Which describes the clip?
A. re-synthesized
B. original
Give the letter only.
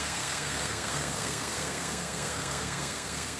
A